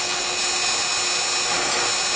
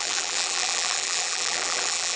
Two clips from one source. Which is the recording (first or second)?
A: first